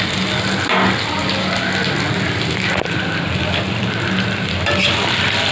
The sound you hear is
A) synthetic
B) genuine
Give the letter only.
B